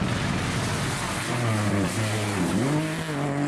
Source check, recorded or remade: recorded